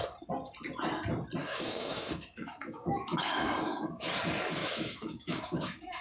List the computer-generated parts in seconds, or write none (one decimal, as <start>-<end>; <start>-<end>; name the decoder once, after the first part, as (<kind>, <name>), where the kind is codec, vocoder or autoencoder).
1.4-4.1 (autoencoder, DAC-VAE); 4.6-6.0